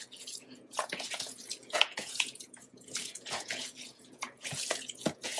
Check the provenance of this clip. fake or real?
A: fake